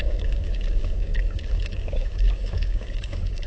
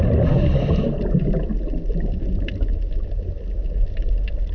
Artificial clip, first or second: first